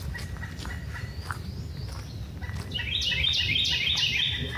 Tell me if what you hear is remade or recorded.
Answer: recorded